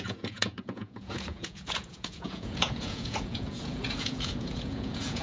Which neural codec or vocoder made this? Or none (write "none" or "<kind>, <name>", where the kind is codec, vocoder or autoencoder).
vocoder, Vocos